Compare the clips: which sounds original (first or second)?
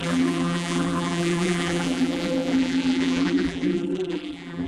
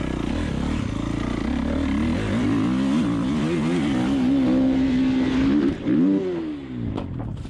second